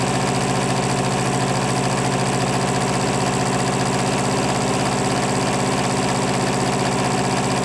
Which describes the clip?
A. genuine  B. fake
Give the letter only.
A